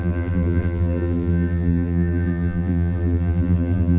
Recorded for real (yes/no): no